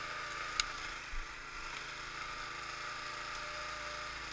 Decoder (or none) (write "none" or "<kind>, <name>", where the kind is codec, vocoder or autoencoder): none